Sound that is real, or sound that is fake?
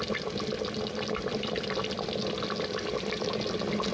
real